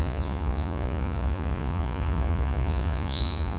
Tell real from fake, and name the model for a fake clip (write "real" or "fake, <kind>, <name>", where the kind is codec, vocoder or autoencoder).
fake, vocoder, Vocos